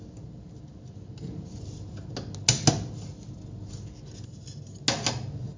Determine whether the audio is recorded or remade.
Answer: recorded